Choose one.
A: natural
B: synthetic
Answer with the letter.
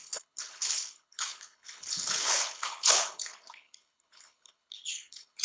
B